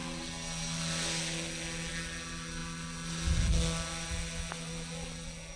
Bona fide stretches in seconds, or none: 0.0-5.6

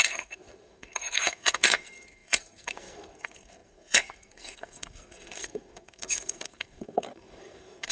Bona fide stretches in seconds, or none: none

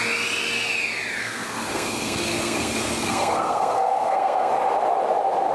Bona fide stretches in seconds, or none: 0.0-1.2; 4.5-5.5

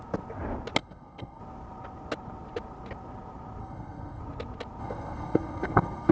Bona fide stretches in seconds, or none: 0.0-0.8; 1.4-3.6; 4.2-4.8

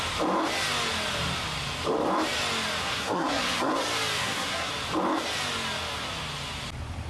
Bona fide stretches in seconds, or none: 0.0-2.8; 3.7-4.2; 4.7-7.1

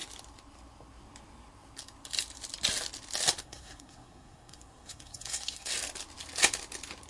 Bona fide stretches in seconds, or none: 0.0-3.4; 5.7-7.1

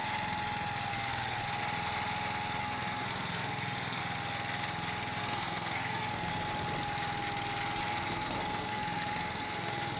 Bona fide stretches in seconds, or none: 0.0-0.9; 1.4-2.6; 4.0-5.2; 6.3-7.8